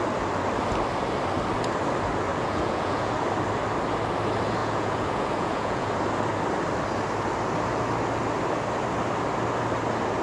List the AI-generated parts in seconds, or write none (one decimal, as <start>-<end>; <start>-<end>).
2.3-3.1; 4.6-5.9